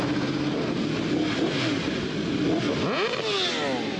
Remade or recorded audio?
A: recorded